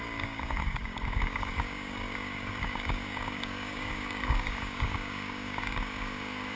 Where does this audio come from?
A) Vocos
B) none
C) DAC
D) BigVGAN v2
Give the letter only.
C